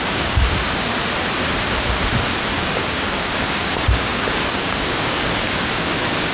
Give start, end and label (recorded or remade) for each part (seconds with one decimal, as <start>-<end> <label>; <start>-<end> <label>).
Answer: 0.0-0.9 remade; 0.9-2.6 recorded; 2.6-6.3 remade

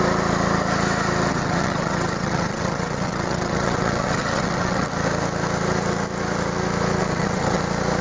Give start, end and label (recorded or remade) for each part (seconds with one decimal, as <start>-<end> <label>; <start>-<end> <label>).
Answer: 0.0-1.3 recorded; 1.3-4.9 remade; 4.9-7.0 recorded; 7.0-7.6 remade; 7.6-8.0 recorded